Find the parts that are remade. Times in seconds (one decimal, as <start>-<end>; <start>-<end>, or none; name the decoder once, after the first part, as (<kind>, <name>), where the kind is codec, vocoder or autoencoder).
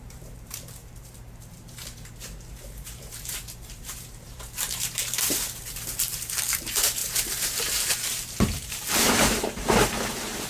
0.0-10.5 (vocoder, BigVGAN v2)